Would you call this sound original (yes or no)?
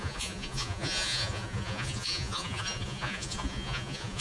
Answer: no